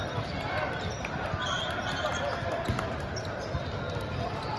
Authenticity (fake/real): real